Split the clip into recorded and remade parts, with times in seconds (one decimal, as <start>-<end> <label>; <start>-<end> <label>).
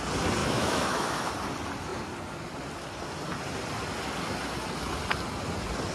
0.0-0.4 recorded; 0.4-1.3 remade; 1.3-5.9 recorded